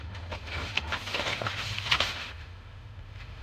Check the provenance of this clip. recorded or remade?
remade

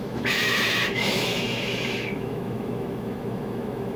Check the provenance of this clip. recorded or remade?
remade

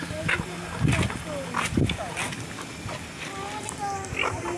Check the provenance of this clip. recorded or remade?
recorded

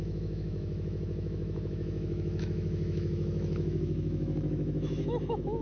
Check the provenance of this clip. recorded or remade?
remade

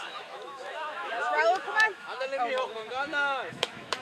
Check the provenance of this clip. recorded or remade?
remade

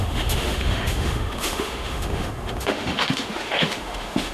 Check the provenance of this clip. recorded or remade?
remade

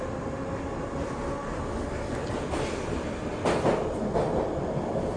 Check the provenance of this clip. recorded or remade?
recorded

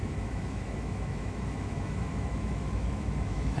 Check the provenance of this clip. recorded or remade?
remade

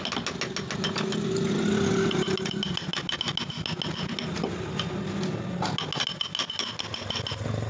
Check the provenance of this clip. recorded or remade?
recorded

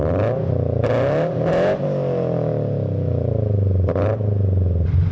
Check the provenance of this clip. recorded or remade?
recorded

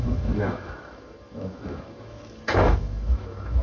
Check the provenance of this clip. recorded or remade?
remade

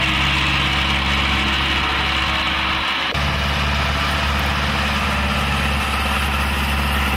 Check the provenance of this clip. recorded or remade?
recorded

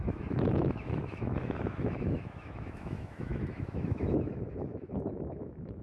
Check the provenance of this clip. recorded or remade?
remade